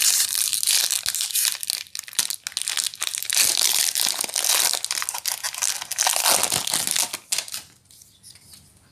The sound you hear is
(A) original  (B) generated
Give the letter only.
A